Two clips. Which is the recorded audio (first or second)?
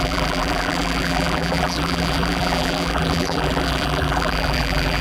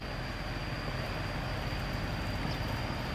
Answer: second